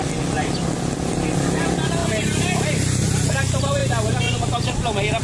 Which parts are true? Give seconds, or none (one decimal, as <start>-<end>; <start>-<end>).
0.0-5.2